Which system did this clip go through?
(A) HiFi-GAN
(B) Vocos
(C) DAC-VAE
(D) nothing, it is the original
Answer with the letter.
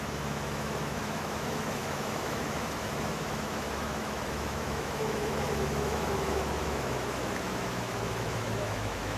C